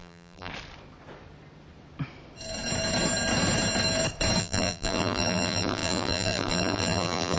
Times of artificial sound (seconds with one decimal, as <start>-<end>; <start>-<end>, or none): 0.0-0.5; 4.4-7.4